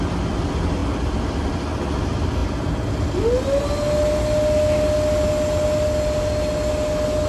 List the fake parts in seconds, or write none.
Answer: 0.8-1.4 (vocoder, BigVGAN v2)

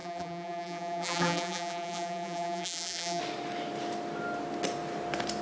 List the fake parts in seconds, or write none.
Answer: 0.0-3.2 (vocoder, BigVGAN v2)